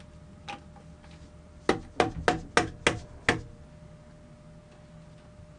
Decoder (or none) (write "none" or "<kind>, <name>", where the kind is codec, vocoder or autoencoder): none